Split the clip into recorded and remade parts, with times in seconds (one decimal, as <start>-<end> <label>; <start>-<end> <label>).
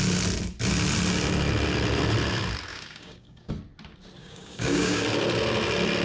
0.0-2.7 recorded; 2.7-3.5 remade; 3.5-4.2 recorded; 4.2-5.0 remade; 5.0-6.0 recorded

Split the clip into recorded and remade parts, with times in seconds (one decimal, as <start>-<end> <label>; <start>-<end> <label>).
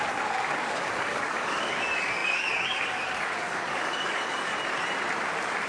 0.0-4.5 remade; 4.5-5.7 recorded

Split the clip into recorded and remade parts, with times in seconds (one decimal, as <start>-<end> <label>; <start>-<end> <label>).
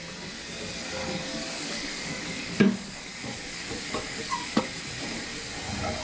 0.0-1.0 recorded; 1.0-4.6 remade; 4.6-6.0 recorded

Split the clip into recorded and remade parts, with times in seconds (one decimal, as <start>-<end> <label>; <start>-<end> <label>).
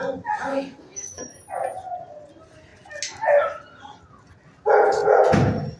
0.0-0.5 recorded; 0.5-1.2 remade; 1.2-5.8 recorded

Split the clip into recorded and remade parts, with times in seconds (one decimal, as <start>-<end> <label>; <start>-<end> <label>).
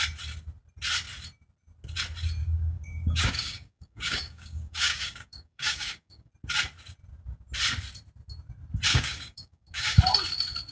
0.0-2.4 recorded; 2.4-6.3 remade; 6.3-8.9 recorded; 8.9-10.0 remade; 10.0-10.7 recorded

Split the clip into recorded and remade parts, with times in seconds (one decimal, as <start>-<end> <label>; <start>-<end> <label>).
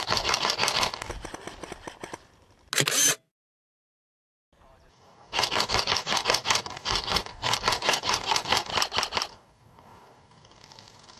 0.0-1.1 remade; 1.1-4.9 recorded; 4.9-8.7 remade; 8.7-9.3 recorded; 9.3-11.2 remade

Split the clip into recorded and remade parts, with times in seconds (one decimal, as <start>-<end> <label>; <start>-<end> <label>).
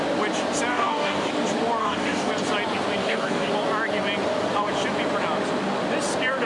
0.0-0.7 recorded; 0.7-1.3 remade; 1.3-1.8 recorded; 1.8-2.3 remade; 2.3-3.0 recorded; 3.0-3.5 remade; 3.5-6.5 recorded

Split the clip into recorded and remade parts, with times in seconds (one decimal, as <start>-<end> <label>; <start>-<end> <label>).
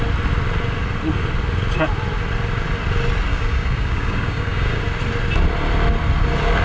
0.0-3.3 recorded; 3.3-4.8 remade; 4.8-6.6 recorded